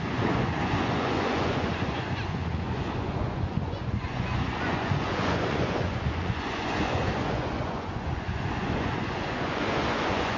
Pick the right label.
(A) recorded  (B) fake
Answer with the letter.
B